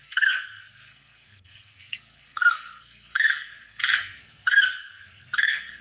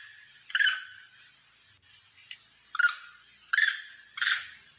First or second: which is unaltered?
second